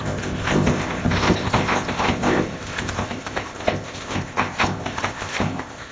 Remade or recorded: remade